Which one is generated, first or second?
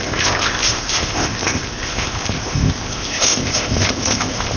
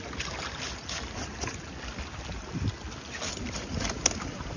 first